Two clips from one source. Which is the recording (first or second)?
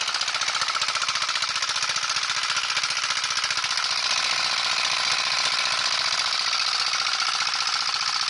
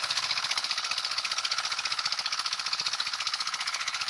first